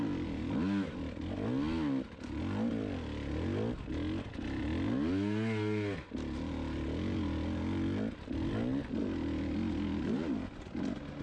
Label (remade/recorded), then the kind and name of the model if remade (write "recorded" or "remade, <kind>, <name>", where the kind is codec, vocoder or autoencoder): recorded